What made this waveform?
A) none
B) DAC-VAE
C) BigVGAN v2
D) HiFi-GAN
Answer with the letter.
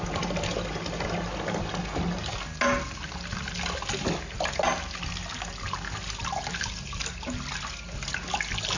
A